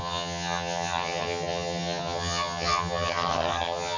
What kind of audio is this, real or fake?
fake